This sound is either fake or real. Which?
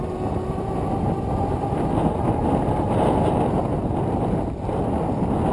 real